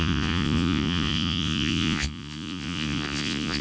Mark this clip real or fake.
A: fake